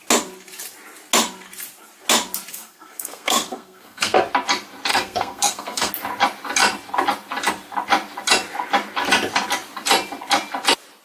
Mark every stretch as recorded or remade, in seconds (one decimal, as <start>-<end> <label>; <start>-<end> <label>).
0.0-2.5 recorded; 2.5-4.2 remade; 4.2-4.9 recorded; 4.9-5.9 remade; 5.9-11.0 recorded